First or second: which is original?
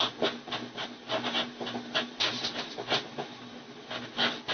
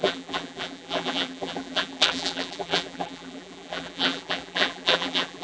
first